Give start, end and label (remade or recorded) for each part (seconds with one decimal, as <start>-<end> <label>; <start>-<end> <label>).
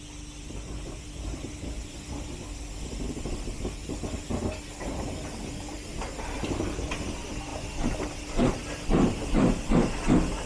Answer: 0.0-10.5 recorded